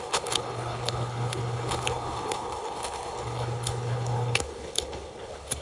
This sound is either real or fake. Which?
fake